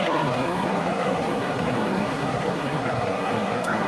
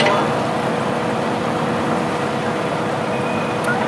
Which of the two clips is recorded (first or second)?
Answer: second